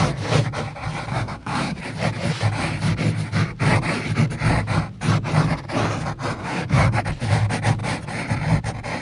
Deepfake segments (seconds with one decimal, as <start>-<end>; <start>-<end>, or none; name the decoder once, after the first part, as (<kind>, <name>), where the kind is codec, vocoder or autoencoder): 1.1-1.8 (codec, SNAC); 6.4-7.0